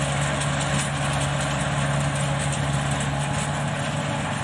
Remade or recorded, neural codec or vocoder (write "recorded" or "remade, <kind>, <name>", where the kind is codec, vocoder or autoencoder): recorded